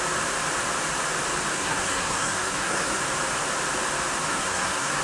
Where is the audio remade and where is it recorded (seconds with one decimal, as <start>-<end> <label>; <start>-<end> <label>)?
0.0-1.5 recorded; 1.5-3.0 remade; 3.0-4.3 recorded; 4.3-5.0 remade